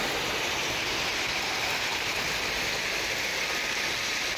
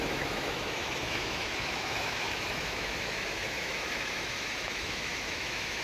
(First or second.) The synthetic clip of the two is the second